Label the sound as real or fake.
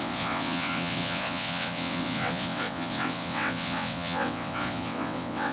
fake